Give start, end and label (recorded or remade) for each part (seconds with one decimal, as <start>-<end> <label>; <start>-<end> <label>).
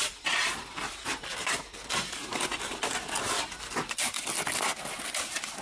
0.0-5.6 recorded